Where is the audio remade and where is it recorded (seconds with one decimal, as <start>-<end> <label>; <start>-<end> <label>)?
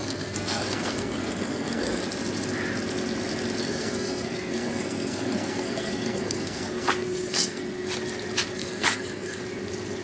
0.0-2.0 remade; 2.0-3.6 recorded; 3.6-7.9 remade; 7.9-8.6 recorded; 8.6-9.4 remade; 9.4-10.0 recorded